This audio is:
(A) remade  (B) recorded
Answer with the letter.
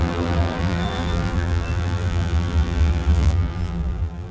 A